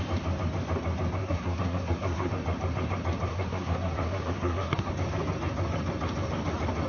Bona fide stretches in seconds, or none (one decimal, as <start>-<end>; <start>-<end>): 0.0-1.2; 2.3-3.3; 4.9-6.9